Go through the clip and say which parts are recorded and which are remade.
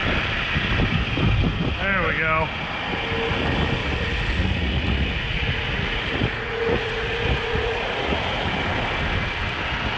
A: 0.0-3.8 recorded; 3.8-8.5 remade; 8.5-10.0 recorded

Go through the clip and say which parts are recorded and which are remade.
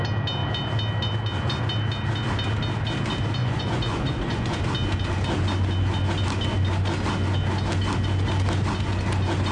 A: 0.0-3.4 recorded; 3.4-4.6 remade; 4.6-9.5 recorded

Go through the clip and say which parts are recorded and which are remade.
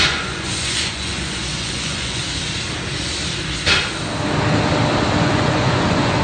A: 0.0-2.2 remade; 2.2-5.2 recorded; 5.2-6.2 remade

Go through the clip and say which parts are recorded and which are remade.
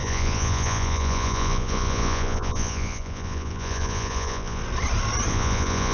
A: 0.0-4.6 remade; 4.6-5.3 recorded; 5.3-5.9 remade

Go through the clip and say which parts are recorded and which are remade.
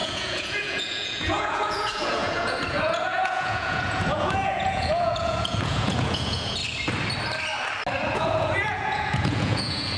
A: 0.0-6.6 remade; 6.6-8.1 recorded; 8.1-10.0 remade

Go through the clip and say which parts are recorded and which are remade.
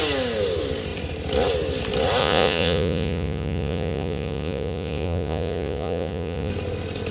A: 0.0-2.2 recorded; 2.2-6.5 remade; 6.5-7.1 recorded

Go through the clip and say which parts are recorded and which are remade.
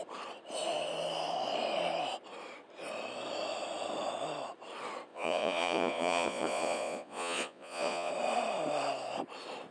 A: 0.0-5.1 recorded; 5.1-8.1 remade; 8.1-9.7 recorded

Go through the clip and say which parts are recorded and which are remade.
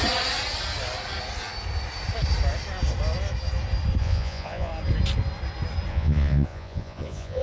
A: 0.0-4.0 recorded; 4.0-4.7 remade; 4.7-5.9 recorded; 5.9-7.4 remade